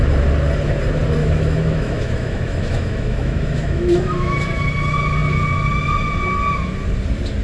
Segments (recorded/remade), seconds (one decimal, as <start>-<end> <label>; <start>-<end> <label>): 0.0-1.2 recorded; 1.2-4.7 remade; 4.7-7.4 recorded